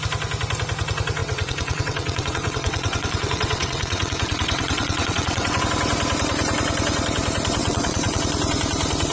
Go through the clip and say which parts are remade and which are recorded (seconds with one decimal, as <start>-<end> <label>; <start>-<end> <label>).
0.0-1.2 recorded; 1.2-5.6 remade; 5.6-7.6 recorded; 7.6-8.2 remade; 8.2-9.1 recorded